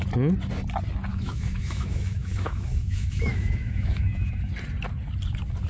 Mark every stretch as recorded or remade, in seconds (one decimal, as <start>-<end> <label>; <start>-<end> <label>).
0.0-1.1 recorded; 1.1-4.5 remade; 4.5-5.7 recorded